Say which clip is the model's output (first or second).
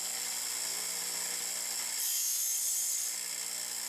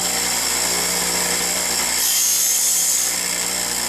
second